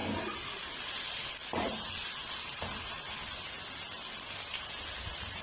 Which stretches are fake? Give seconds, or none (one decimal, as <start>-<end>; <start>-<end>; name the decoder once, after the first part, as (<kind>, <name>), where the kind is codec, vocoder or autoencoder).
none